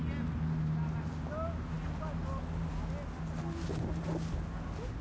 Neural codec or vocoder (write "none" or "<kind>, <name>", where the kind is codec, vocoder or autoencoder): none